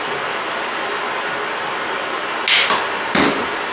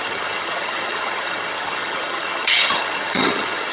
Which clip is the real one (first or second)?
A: first